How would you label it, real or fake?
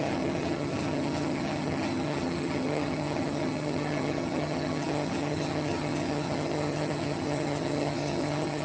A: fake